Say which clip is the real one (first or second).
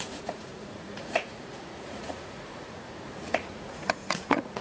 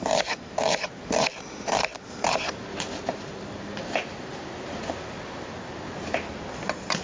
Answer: second